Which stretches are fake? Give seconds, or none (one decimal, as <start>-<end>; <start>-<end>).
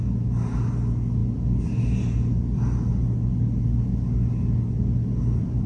none